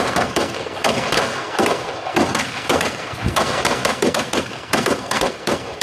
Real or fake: fake